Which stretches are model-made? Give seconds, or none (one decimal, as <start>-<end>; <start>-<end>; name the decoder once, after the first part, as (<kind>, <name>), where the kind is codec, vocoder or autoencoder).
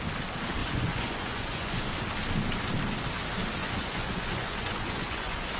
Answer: 0.6-1.8 (vocoder, Vocos); 3.6-5.6